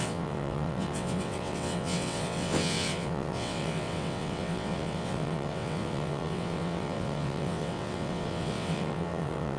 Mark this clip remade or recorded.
remade